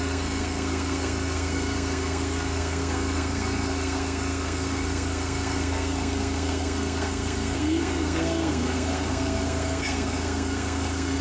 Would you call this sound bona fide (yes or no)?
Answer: no